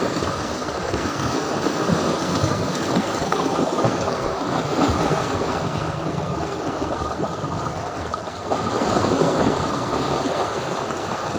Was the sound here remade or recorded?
remade